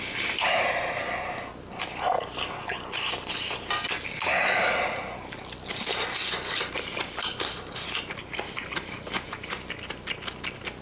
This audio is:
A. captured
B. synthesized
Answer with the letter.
A